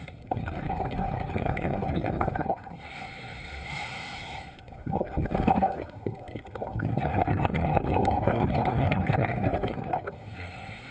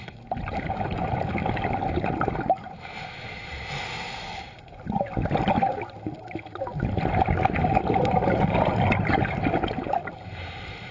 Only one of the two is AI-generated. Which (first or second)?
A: first